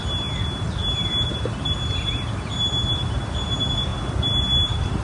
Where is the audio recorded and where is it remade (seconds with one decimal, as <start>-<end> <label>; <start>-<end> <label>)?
0.0-5.0 recorded